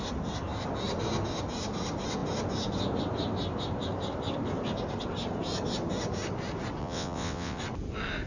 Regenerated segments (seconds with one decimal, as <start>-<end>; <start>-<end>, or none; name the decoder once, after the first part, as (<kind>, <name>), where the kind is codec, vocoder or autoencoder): 6.8-7.6 (vocoder, WaveNeXt)

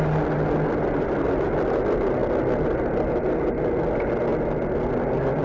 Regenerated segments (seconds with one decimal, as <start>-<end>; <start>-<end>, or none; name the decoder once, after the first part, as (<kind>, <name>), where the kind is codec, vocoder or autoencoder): none

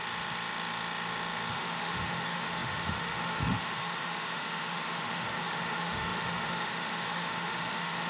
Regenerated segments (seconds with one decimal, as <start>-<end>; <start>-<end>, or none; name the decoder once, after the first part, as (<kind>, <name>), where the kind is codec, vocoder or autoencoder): 1.5-8.1 (autoencoder, DAC-VAE)

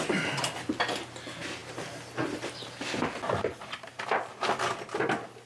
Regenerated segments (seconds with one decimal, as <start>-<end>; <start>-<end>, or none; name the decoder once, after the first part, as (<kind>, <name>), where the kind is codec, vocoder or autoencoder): none

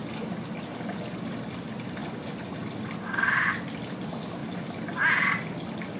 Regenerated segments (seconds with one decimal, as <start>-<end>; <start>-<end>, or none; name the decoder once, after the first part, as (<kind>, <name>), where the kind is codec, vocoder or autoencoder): none

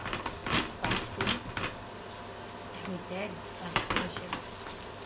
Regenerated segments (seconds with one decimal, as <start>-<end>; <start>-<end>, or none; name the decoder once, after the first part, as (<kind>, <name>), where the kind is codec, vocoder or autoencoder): none

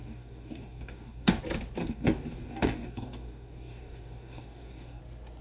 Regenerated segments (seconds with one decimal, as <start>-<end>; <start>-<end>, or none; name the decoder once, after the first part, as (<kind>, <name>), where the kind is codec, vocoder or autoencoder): 0.0-1.4 (codec, DAC); 1.8-5.0

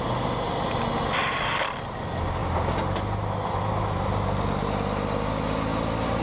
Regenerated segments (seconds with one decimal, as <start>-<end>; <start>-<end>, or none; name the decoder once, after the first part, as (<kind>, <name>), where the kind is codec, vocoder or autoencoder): none